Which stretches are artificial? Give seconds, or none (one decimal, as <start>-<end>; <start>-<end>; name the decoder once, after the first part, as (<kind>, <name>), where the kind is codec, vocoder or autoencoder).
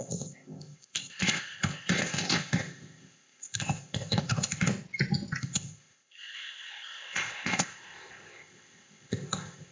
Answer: 0.0-4.7 (codec, ZipCodec); 5.4-9.7